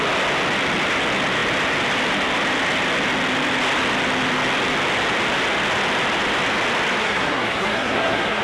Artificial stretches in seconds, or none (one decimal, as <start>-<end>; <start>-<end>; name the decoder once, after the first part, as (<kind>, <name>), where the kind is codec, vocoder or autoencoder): 7.0-8.4 (codec, SNAC)